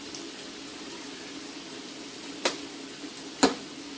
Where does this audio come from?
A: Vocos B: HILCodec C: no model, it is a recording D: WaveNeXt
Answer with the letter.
C